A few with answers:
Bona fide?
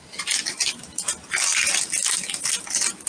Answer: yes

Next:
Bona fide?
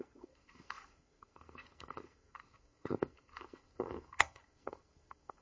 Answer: no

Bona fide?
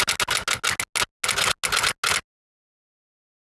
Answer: yes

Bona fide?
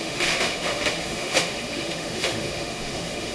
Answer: no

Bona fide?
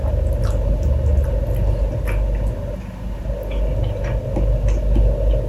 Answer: yes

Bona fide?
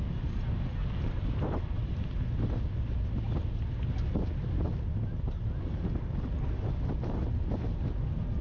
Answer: yes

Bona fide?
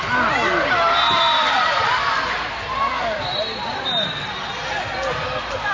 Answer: no